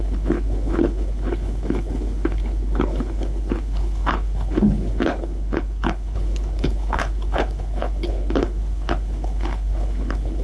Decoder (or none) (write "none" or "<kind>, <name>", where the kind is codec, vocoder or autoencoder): codec, HILCodec